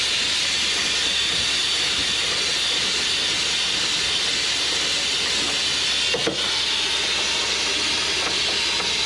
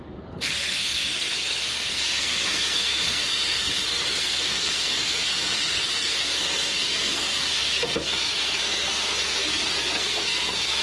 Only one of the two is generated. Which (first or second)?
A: second